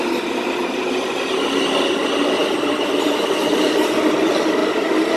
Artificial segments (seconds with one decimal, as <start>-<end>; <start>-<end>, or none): none